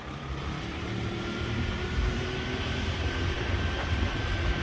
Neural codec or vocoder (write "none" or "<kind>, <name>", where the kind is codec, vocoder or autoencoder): vocoder, BigVGAN v2